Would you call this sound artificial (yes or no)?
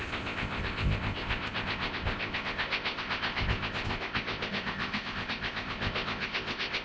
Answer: yes